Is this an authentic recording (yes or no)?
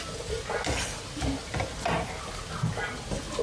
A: yes